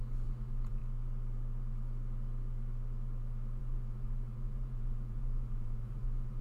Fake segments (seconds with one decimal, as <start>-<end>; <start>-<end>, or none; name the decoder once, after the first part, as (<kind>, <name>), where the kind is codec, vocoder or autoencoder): 0.0-0.8 (vocoder, Vocos); 3.6-6.4